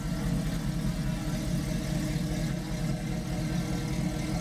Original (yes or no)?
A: yes